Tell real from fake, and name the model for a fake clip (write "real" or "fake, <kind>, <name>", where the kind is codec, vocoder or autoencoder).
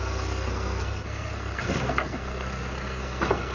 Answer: fake, codec, SNAC